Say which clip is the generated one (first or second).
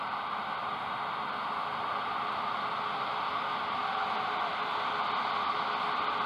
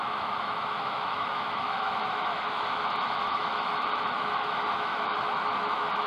second